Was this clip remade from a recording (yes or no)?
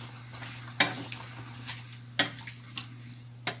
no